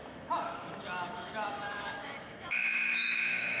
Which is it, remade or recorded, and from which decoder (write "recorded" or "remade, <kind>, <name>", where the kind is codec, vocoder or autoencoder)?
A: remade, autoencoder, DAC-VAE